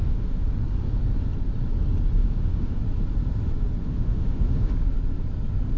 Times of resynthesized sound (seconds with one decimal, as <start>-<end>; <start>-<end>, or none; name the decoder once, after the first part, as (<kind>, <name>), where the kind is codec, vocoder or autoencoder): 0.0-0.5 (autoencoder, DAC-VAE); 2.2-2.8; 3.8-4.7